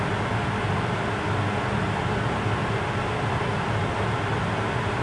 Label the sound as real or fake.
real